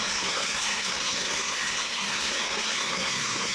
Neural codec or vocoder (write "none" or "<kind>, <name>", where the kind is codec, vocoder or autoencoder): codec, SNAC